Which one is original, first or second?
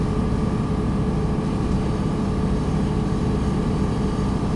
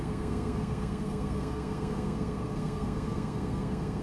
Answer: first